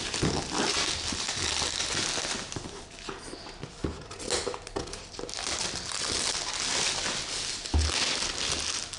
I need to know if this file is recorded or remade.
recorded